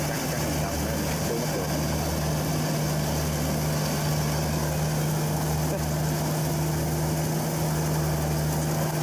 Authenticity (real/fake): real